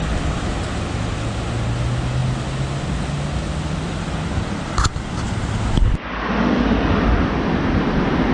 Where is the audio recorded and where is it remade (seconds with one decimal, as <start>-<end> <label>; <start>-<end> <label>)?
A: 0.0-8.3 recorded